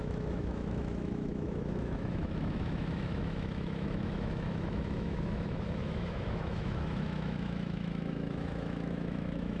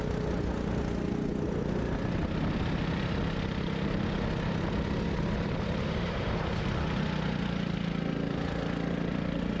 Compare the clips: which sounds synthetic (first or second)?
first